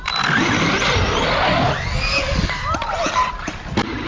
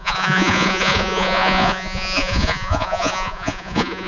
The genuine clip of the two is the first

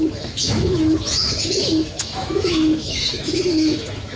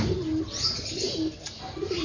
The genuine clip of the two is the second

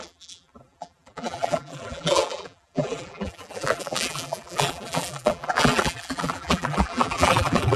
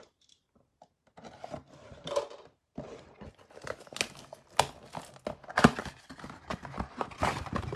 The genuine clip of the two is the second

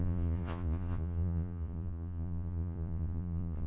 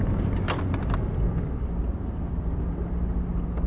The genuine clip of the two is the second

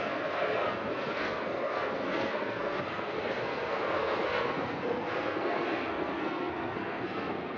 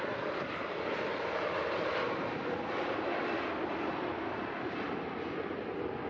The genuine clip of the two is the second